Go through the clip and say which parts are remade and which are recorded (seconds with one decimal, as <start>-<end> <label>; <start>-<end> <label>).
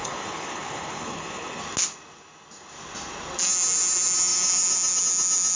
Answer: 0.0-1.6 remade; 1.6-5.6 recorded